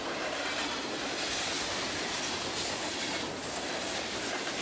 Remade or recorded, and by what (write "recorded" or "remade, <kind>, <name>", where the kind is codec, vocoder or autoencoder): recorded